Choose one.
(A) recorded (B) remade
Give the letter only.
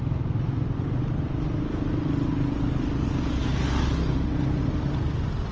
A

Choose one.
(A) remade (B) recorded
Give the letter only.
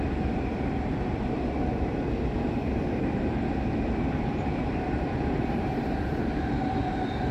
A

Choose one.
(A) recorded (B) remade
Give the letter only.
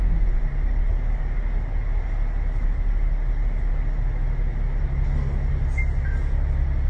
A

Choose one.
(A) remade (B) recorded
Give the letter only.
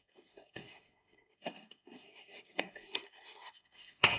A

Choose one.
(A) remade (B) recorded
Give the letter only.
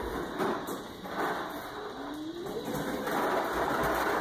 B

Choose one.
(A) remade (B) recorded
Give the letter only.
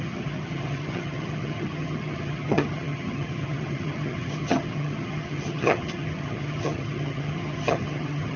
A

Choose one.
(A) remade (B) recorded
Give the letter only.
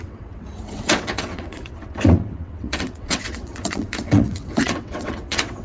A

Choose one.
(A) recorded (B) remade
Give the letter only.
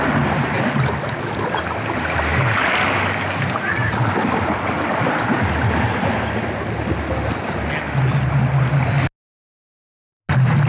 A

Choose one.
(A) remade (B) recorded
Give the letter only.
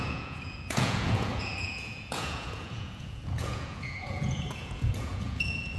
A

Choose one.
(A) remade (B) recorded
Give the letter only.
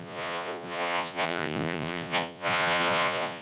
A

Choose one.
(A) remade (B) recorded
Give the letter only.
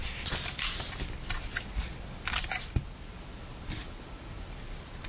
B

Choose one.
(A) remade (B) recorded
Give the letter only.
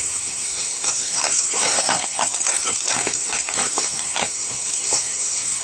A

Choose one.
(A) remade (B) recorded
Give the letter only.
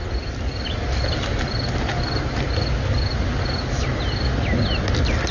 B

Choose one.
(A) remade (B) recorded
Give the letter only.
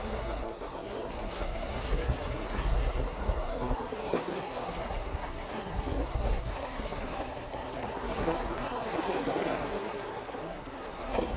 A